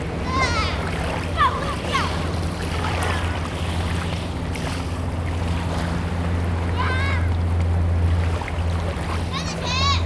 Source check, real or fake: real